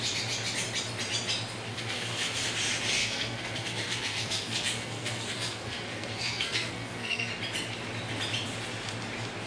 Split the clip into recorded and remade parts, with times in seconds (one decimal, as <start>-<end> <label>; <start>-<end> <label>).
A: 0.0-1.7 recorded; 1.7-2.4 remade; 2.4-3.0 recorded; 3.0-7.3 remade; 7.3-9.5 recorded